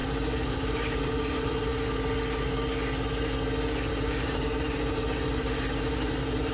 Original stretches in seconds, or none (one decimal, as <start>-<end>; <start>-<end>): 1.7-3.9